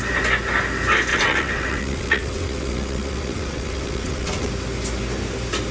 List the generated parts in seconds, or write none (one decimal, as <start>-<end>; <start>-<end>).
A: 1.1-4.5